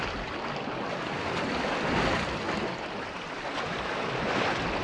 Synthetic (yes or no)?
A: no